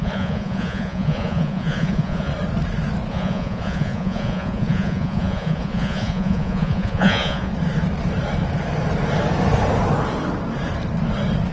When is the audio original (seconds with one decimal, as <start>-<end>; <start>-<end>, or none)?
2.3-3.1; 7.5-11.5